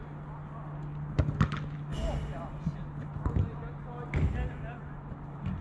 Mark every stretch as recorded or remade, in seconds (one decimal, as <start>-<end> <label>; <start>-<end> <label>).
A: 0.0-5.6 recorded

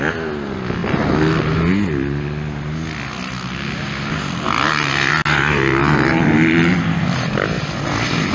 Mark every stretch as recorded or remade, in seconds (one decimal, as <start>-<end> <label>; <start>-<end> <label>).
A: 0.0-8.3 recorded

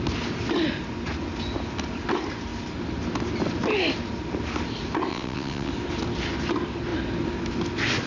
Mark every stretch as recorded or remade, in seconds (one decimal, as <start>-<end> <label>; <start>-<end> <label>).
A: 0.0-5.1 recorded; 5.1-5.7 remade; 5.7-8.1 recorded

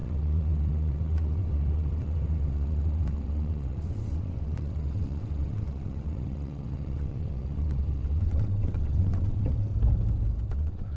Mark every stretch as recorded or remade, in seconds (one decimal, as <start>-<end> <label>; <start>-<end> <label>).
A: 0.0-9.7 remade; 9.7-10.5 recorded; 10.5-11.0 remade

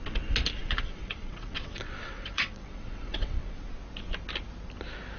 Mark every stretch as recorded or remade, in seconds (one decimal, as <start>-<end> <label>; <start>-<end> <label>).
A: 0.0-0.6 recorded; 0.6-3.7 remade; 3.7-5.2 recorded

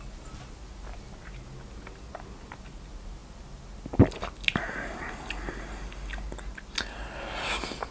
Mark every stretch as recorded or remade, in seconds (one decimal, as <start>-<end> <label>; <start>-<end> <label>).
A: 0.0-7.9 recorded

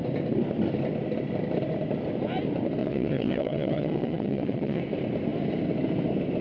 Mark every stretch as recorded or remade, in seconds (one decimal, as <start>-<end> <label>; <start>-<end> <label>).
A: 0.0-2.8 recorded; 2.8-4.8 remade; 4.8-6.4 recorded